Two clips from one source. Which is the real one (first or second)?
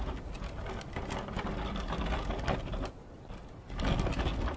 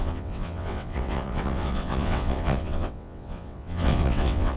first